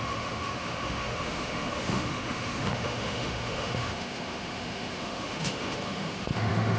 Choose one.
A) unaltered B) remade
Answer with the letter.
B